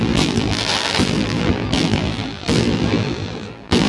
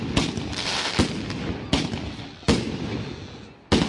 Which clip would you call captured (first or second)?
second